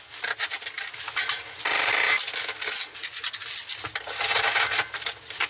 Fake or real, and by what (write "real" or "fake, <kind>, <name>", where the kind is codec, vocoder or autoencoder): real